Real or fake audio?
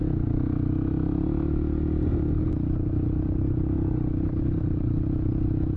real